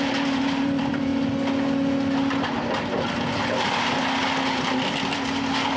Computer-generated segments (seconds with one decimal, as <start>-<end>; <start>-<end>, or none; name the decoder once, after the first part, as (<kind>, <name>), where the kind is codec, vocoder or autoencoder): 0.0-1.1 (vocoder, BigVGAN v2); 4.6-5.8